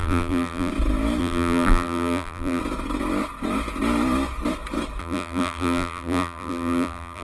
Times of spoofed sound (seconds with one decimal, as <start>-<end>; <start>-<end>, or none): 0.0-0.7; 1.2-2.6; 5.0-7.2